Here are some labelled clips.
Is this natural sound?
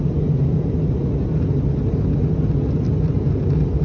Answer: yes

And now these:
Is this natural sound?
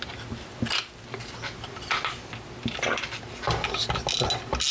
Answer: yes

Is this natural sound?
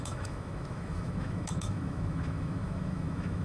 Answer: no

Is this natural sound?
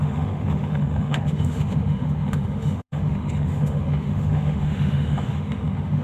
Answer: no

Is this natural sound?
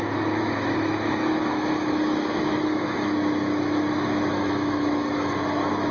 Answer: no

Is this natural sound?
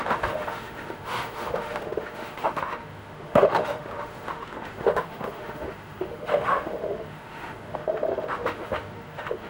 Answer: no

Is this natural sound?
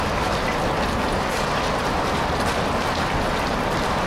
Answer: yes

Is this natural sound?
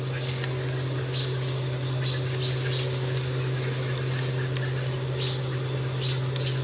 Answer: yes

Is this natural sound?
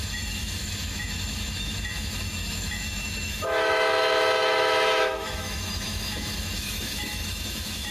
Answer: no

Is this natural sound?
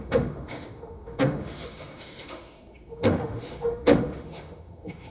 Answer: no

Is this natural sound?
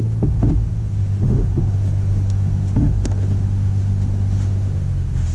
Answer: no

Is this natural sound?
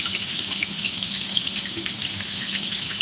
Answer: no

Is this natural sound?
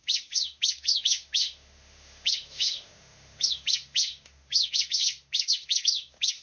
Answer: no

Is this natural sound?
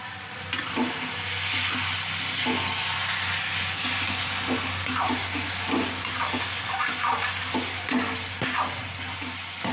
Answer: yes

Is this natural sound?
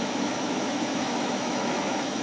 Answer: no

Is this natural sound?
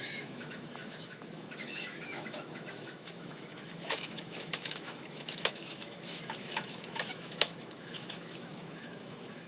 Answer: no